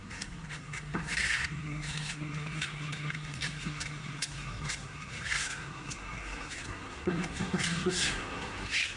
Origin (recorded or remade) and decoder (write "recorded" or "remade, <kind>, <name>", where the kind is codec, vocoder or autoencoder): remade, codec, SNAC